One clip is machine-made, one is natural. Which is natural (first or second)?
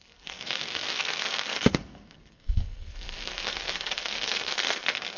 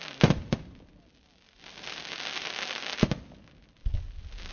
second